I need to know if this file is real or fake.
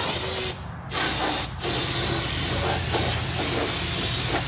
real